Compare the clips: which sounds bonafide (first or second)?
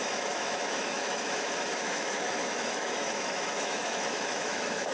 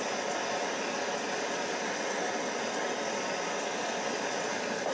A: second